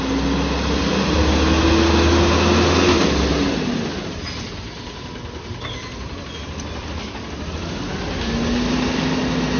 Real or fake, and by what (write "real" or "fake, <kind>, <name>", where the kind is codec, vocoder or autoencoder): real